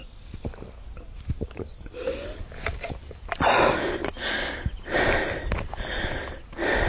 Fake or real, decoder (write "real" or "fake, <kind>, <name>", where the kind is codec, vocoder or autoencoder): real